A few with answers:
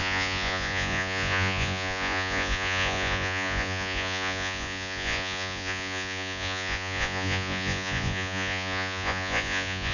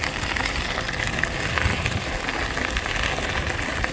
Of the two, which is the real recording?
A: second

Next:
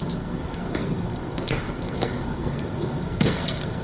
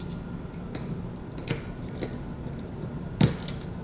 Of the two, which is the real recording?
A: second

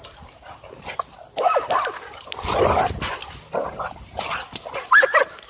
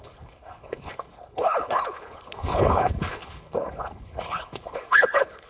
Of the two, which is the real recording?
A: first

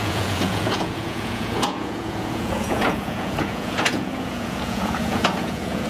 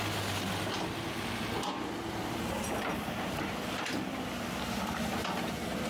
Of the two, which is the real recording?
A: second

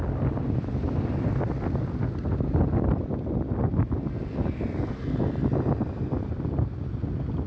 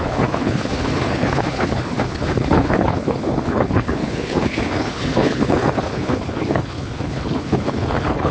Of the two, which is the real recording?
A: first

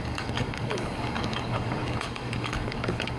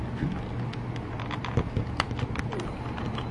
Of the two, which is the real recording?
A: second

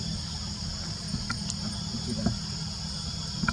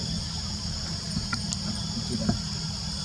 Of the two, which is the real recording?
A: first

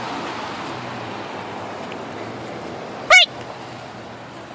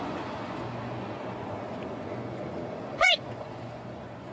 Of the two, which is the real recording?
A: first